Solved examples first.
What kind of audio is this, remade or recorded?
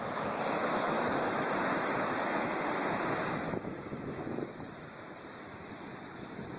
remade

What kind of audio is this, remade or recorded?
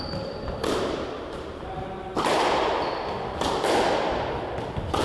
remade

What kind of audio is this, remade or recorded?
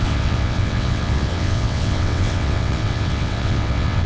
remade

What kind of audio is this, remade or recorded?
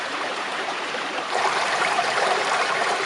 remade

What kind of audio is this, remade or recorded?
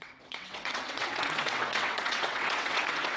remade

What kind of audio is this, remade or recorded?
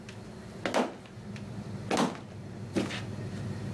recorded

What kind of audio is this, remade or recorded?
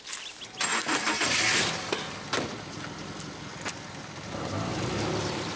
recorded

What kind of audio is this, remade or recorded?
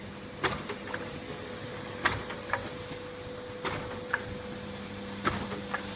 recorded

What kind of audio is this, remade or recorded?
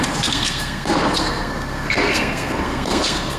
remade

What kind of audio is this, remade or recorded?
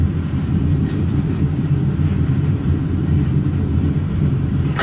remade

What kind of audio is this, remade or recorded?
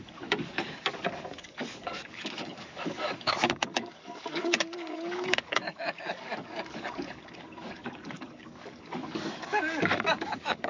remade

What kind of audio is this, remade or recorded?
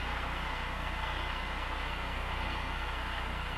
remade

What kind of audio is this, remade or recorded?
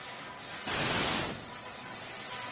recorded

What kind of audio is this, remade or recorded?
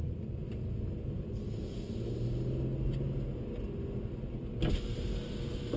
recorded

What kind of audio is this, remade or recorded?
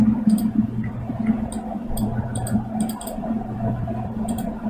remade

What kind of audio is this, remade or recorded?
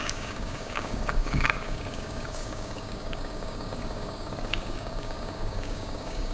remade